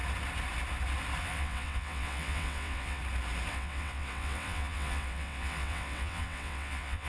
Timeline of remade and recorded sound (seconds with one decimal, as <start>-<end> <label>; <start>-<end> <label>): 0.0-1.2 recorded; 1.2-3.0 remade; 3.0-3.5 recorded; 3.5-7.1 remade